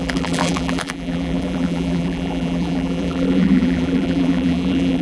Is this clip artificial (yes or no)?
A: yes